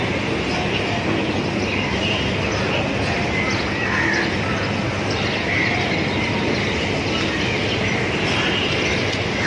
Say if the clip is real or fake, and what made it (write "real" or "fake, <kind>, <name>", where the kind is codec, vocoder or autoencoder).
real